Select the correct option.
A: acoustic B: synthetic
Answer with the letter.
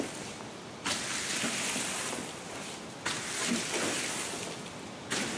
A